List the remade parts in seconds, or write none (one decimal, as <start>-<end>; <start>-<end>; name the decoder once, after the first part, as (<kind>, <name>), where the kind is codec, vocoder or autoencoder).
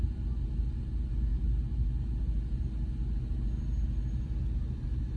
none